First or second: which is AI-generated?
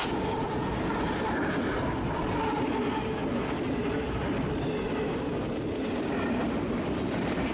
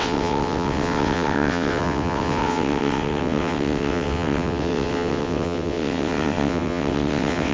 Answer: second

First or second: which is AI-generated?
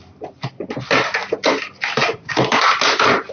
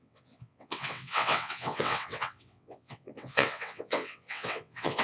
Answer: second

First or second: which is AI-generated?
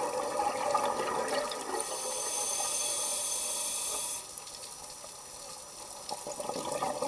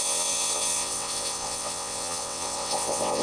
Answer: second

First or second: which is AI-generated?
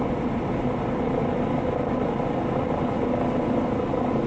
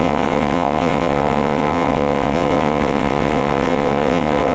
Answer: second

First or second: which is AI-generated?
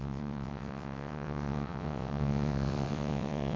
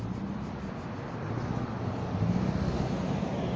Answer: first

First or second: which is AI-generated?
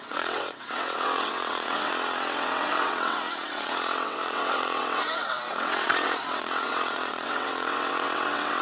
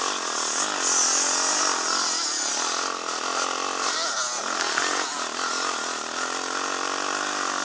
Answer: first